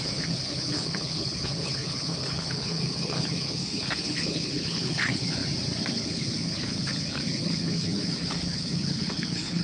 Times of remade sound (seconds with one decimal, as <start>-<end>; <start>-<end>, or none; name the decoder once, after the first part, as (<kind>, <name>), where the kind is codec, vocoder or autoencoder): 0.0-5.4 (codec, HILCodec); 5.9-9.6